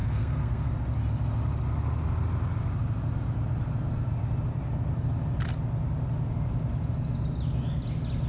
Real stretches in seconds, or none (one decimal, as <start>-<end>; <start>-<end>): 0.7-8.3